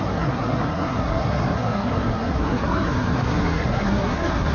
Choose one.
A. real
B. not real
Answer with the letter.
B